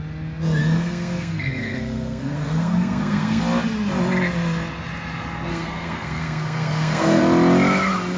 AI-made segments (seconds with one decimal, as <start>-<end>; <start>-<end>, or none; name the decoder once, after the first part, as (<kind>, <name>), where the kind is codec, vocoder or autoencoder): 0.6-3.4 (codec, SNAC); 5.5-7.2